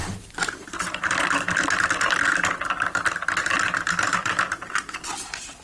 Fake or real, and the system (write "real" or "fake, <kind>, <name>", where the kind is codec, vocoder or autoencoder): real